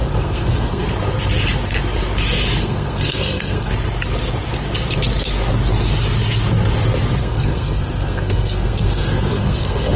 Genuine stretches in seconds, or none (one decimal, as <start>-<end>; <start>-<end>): 0.8-2.6; 3.7-7.2